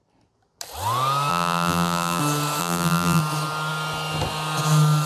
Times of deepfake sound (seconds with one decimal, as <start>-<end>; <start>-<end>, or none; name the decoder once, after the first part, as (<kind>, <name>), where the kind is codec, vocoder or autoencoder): 1.3-2.2 (vocoder, BigVGAN v2); 2.6-3.2